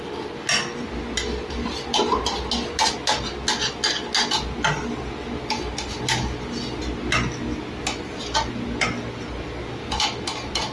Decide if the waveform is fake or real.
real